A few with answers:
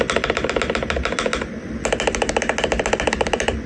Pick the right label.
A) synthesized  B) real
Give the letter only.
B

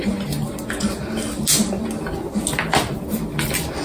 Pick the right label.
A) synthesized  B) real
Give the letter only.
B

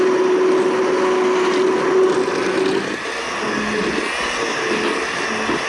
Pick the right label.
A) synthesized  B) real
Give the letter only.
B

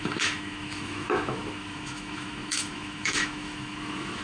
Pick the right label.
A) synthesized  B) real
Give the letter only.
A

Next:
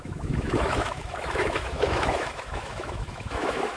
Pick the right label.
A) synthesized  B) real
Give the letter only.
A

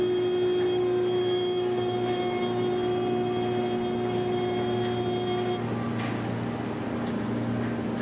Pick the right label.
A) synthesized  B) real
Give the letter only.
B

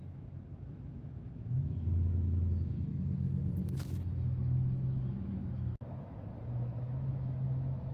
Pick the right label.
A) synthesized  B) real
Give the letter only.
A